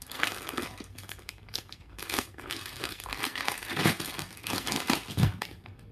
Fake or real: fake